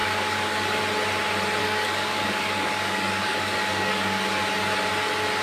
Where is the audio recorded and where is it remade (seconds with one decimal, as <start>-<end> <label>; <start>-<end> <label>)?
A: 0.0-0.8 remade; 0.8-1.6 recorded; 1.6-4.4 remade; 4.4-5.4 recorded